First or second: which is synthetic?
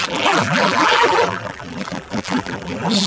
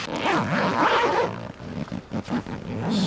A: first